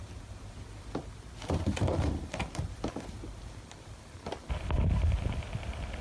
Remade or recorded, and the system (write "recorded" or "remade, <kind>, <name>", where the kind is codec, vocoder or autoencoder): recorded